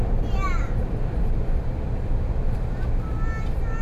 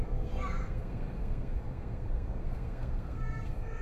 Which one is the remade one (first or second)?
second